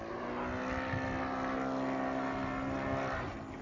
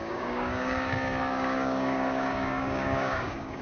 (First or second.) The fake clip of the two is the second